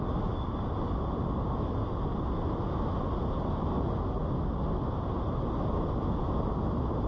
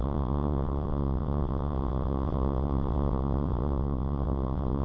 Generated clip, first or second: second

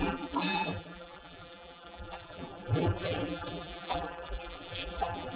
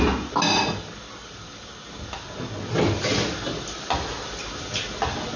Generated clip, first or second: first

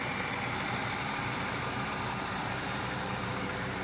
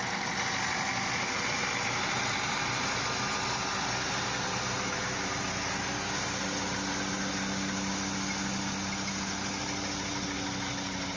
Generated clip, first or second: first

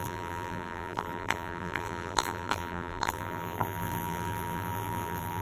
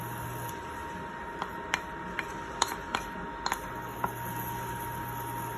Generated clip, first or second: first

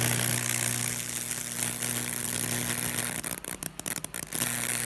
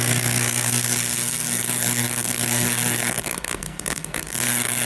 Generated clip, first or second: second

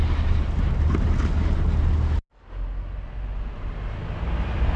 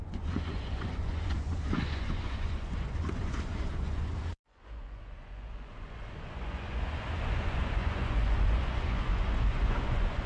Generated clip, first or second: second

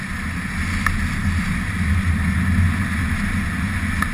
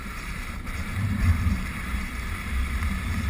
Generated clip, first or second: second